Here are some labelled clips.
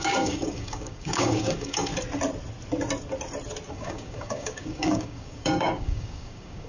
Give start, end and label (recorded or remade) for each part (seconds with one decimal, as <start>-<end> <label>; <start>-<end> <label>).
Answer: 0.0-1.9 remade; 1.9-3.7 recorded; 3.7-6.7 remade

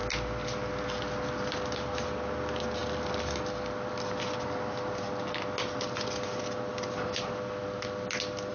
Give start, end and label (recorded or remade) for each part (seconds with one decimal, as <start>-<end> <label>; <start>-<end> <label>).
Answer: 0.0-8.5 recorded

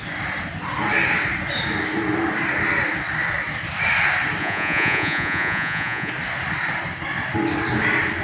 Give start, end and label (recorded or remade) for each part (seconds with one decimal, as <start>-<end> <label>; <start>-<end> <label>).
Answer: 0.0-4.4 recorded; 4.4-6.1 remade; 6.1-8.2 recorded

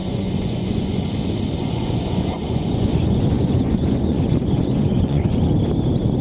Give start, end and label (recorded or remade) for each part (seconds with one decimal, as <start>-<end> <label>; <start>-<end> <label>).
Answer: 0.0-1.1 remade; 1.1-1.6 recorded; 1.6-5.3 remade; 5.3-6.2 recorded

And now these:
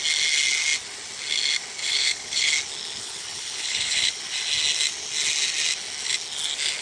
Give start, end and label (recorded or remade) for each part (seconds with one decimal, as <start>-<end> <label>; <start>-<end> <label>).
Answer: 0.0-1.8 recorded; 1.8-2.5 remade; 2.5-3.0 recorded; 3.0-4.2 remade; 4.2-6.8 recorded

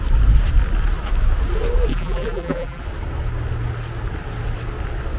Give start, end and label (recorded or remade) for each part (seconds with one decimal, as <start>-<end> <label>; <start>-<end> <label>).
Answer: 0.0-1.9 recorded; 1.9-2.8 remade; 2.8-5.2 recorded